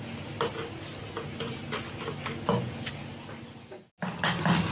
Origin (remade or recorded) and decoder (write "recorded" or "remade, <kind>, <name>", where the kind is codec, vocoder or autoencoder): recorded